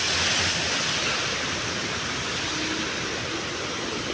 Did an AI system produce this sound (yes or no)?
no